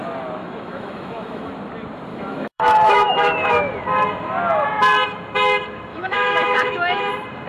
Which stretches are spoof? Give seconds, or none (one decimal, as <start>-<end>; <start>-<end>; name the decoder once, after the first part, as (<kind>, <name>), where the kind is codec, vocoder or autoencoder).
0.4-1.5 (autoencoder, DAC-VAE); 2.1-3.8; 5.9-7.1